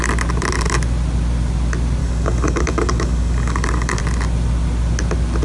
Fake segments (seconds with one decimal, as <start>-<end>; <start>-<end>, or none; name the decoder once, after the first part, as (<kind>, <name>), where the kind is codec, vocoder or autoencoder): 2.0-4.0 (codec, DAC)